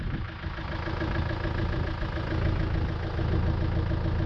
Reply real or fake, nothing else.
real